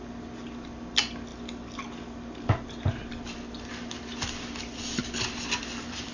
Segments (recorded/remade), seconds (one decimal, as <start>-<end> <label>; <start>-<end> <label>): 0.0-6.1 recorded